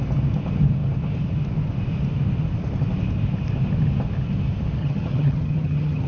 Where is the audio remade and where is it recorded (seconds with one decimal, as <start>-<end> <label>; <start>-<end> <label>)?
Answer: 0.0-4.8 recorded; 4.8-6.1 remade